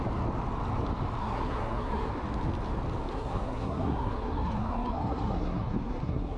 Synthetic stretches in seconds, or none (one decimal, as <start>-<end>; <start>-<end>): 1.2-2.1; 3.1-6.4